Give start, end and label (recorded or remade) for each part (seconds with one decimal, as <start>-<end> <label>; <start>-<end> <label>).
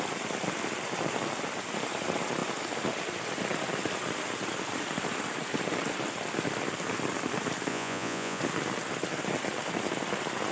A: 0.0-7.7 recorded; 7.7-8.4 remade; 8.4-10.5 recorded